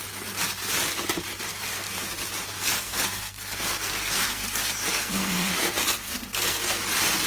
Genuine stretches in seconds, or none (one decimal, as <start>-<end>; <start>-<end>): 0.0-1.5; 2.1-2.5; 6.8-7.3